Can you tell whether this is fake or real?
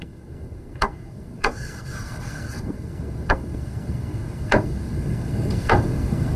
fake